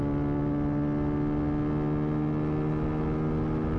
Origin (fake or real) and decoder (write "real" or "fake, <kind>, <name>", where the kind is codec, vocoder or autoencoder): real